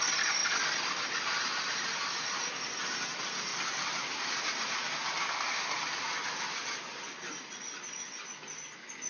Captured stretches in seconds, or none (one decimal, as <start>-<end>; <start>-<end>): 0.0-3.5; 5.8-9.1

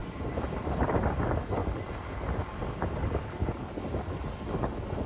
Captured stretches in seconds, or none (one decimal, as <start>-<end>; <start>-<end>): 0.9-5.1